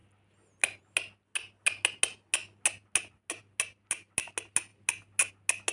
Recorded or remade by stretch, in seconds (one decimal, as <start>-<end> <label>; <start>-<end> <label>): 0.0-5.7 recorded